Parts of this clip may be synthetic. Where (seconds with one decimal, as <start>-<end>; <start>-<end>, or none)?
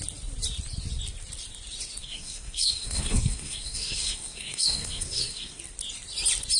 2.0-5.6